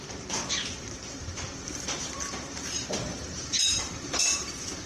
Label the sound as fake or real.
fake